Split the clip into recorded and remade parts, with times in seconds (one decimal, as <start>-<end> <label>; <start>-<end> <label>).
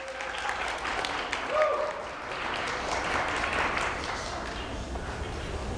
0.0-5.8 recorded